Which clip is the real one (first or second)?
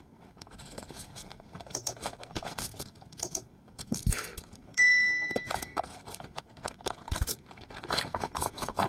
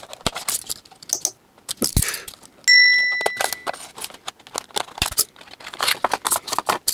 second